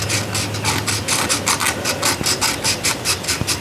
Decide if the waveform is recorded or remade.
recorded